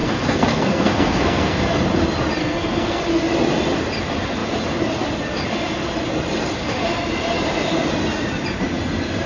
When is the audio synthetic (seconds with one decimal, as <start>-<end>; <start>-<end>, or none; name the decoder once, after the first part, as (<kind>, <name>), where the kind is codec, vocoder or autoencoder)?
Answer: 0.0-1.6 (codec, SNAC); 2.4-3.0